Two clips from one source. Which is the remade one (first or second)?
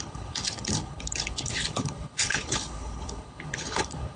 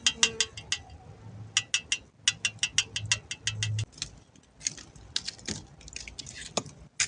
first